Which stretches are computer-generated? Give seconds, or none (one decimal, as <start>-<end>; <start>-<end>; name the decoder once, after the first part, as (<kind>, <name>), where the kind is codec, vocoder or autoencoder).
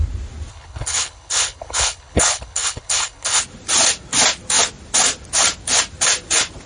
0.5-3.4 (codec, HILCodec)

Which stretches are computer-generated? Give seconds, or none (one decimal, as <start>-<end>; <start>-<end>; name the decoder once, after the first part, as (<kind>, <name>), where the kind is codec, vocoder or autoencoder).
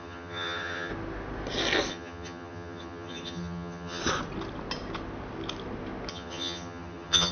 0.0-0.9 (vocoder, HiFi-GAN); 1.9-4.0; 6.1-7.3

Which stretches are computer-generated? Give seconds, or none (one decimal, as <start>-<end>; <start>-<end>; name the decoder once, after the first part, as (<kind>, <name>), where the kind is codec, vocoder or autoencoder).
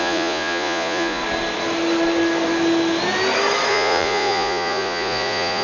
0.0-1.2 (vocoder, Vocos); 3.7-5.6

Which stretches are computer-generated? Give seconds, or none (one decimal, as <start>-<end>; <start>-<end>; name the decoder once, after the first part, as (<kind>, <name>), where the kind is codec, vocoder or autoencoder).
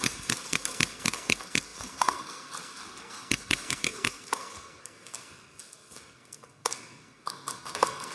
0.0-8.1 (codec, SNAC)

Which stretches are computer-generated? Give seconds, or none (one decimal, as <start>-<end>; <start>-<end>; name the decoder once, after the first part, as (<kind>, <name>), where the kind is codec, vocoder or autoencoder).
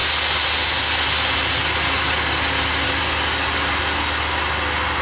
none